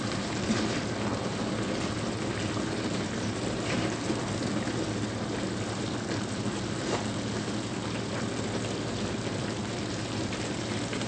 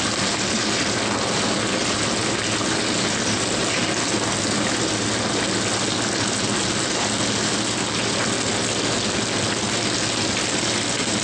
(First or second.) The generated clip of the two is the first